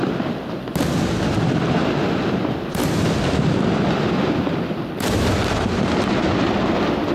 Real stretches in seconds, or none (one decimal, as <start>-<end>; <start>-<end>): 0.0-7.1